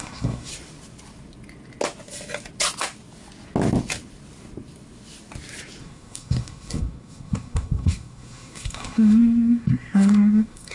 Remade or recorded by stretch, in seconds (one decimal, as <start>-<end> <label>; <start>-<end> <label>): 0.0-0.5 remade; 0.5-5.8 recorded; 5.8-10.7 remade